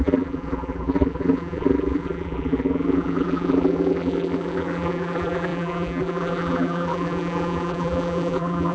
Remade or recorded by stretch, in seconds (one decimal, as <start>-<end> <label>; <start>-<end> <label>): 0.0-8.7 remade